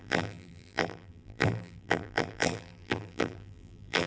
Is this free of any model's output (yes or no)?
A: no